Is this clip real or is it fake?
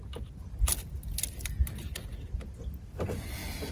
real